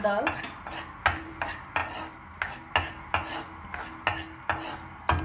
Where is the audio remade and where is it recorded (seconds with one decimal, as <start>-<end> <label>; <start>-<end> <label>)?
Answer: 0.0-5.2 recorded